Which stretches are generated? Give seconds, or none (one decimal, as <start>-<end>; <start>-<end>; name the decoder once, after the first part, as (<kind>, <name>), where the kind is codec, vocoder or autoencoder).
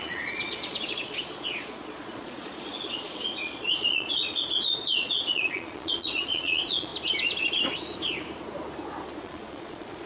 0.0-6.9 (vocoder, Vocos); 9.2-10.1